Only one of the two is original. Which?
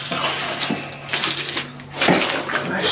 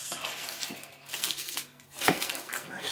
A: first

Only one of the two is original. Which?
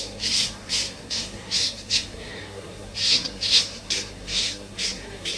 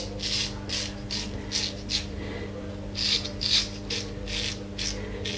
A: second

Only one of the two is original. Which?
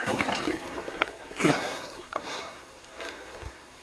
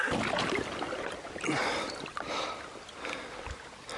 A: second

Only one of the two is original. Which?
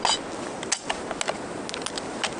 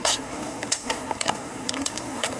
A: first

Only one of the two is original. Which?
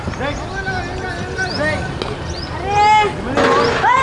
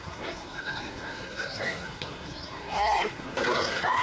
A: first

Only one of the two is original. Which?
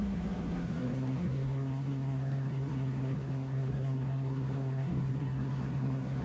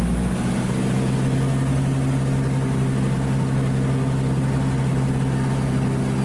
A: second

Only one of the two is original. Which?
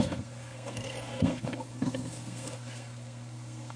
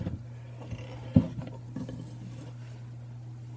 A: second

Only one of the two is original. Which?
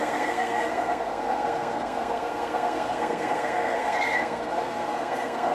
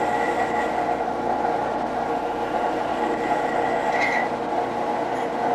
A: second